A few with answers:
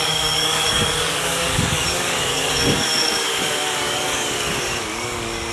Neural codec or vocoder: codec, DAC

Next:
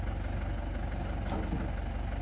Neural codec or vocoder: none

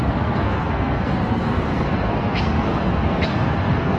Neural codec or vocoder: codec, SNAC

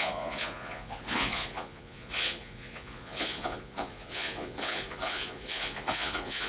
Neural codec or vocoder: vocoder, Vocos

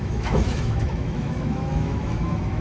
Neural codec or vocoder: autoencoder, DAC-VAE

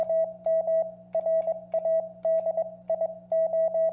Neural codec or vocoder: none